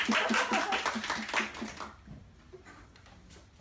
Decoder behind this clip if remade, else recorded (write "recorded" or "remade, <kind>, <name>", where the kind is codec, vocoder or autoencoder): recorded